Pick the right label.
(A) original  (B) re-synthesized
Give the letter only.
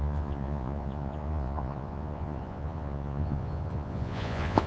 B